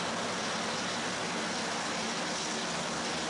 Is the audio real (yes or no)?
yes